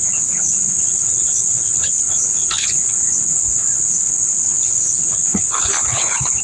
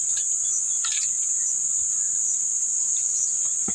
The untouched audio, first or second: second